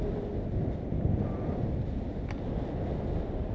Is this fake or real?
real